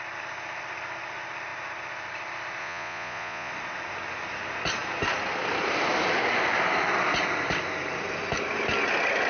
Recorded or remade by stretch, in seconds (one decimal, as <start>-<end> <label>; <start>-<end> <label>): 0.0-2.6 recorded; 2.6-3.5 remade; 3.5-9.3 recorded